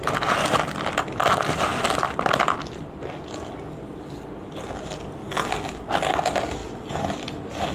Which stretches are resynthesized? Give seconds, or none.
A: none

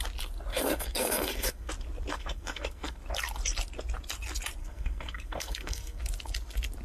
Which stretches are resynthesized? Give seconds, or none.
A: 0.5-1.7 (codec, SNAC); 2.1-3.0; 4.6-6.0

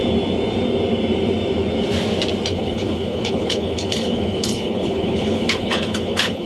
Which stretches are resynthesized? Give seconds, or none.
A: 2.5-6.5 (codec, HILCodec)

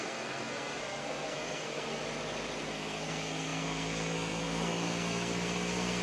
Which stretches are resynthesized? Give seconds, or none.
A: 0.0-2.0 (codec, SNAC); 2.6-6.0